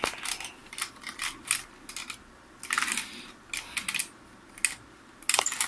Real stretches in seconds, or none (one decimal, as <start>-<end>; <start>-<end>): 0.0-5.7